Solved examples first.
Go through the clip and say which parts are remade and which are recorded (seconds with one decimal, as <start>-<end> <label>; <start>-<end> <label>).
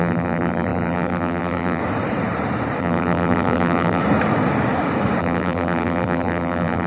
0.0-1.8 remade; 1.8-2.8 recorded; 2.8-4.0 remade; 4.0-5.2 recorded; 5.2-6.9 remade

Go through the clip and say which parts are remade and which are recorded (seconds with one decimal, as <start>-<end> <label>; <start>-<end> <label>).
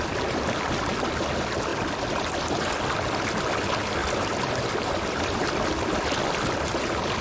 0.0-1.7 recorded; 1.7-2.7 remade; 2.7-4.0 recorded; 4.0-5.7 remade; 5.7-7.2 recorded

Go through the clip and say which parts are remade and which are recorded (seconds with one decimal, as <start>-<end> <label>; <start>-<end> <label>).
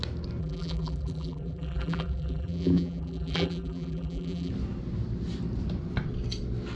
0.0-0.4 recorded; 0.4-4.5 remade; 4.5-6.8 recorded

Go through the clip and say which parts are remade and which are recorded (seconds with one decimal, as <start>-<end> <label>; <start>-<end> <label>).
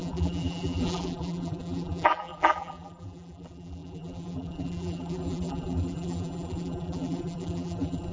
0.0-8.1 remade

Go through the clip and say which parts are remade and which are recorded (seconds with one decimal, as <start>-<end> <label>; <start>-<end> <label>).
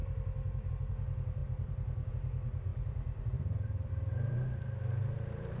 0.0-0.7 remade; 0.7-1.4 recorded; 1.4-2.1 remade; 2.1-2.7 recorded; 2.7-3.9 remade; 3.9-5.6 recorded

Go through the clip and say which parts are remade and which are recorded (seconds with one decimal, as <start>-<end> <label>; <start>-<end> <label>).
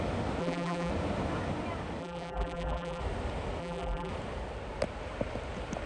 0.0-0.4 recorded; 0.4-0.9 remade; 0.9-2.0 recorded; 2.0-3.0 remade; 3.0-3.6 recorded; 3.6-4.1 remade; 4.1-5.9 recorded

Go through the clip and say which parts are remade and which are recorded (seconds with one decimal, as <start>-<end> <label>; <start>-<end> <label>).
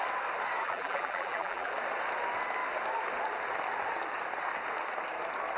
0.0-0.6 recorded; 0.6-1.7 remade; 1.7-5.6 recorded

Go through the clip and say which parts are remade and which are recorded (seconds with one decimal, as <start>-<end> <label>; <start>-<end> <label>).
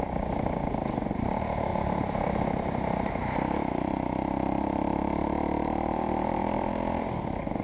0.0-7.6 remade